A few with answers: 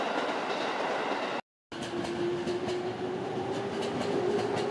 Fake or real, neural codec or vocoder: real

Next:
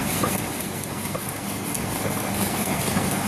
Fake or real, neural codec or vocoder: fake, codec, SNAC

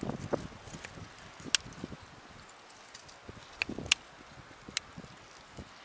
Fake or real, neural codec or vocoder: real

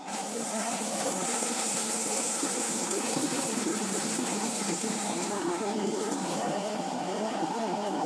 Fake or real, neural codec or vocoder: fake, codec, SNAC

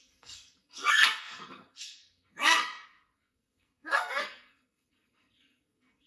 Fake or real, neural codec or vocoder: fake, codec, SNAC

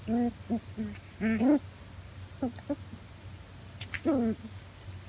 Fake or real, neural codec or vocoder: real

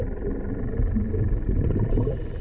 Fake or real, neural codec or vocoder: real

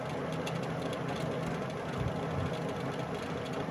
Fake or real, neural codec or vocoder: real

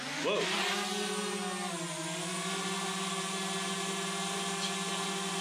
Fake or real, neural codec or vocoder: real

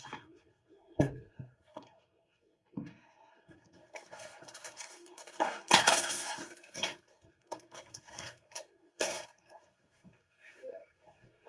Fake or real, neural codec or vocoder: fake, codec, SNAC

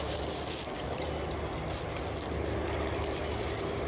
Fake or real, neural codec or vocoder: real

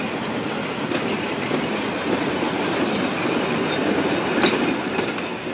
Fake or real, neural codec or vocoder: real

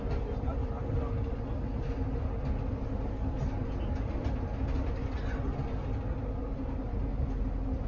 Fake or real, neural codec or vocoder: real